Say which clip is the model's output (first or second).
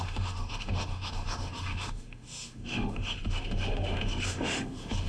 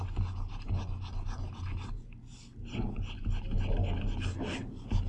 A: first